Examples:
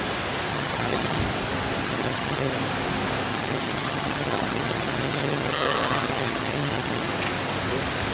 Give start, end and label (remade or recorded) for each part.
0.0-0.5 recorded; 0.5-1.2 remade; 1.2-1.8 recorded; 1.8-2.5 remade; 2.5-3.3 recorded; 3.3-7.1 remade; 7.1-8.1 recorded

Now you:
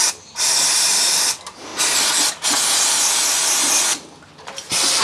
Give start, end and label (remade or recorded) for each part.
0.0-5.0 recorded

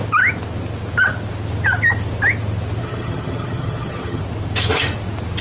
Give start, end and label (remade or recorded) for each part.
0.0-2.8 recorded; 2.8-4.2 remade; 4.2-5.4 recorded

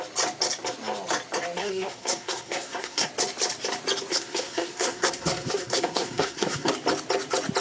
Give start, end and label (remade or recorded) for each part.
0.0-1.6 recorded; 1.6-3.1 remade; 3.1-4.1 recorded; 4.1-6.7 remade; 6.7-7.6 recorded

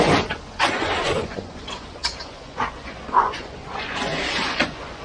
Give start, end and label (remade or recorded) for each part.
0.0-5.0 remade

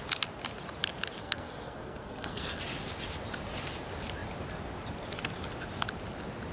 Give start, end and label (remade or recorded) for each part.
0.0-1.2 recorded; 1.2-2.6 remade; 2.6-6.5 recorded